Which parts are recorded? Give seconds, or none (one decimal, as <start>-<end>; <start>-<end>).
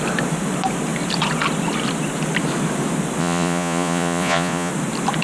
0.0-3.2; 4.7-5.2